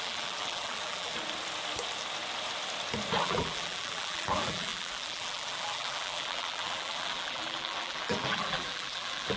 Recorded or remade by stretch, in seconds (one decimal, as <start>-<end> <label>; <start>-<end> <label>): 0.0-1.1 remade; 1.1-3.2 recorded; 3.2-9.4 remade